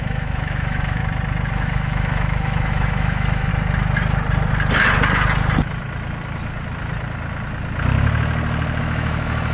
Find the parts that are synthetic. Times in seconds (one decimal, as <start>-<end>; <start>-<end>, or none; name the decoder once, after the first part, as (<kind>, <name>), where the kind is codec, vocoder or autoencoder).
0.0-1.0 (autoencoder, DAC-VAE); 1.5-3.5; 8.8-9.5

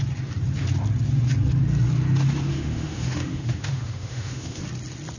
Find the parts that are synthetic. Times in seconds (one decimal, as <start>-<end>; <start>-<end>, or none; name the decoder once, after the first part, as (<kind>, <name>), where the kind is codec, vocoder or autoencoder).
2.5-4.6 (autoencoder, DAC-VAE)

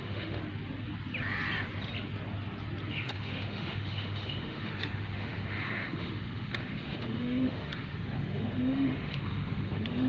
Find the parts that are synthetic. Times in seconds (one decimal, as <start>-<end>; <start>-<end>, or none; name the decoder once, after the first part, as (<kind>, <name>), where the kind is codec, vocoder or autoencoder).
0.0-0.4 (autoencoder, DAC-VAE); 2.9-10.1

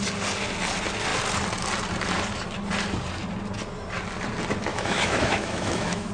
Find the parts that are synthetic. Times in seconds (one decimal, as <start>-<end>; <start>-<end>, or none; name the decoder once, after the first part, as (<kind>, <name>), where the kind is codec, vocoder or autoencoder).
4.7-6.1 (autoencoder, DAC-VAE)